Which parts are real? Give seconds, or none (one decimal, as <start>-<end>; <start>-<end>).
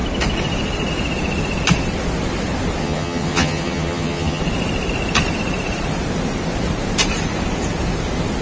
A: 0.0-2.8; 4.4-8.4